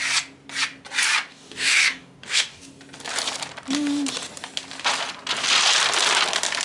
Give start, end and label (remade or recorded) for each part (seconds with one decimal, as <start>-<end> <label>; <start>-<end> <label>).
0.0-1.3 recorded; 1.3-2.7 remade; 2.7-6.6 recorded